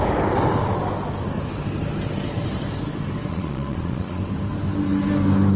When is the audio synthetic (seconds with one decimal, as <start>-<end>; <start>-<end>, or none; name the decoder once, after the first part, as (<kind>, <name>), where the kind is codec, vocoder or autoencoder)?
3.3-4.2 (vocoder, Vocos)